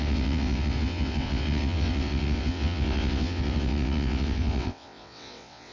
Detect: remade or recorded remade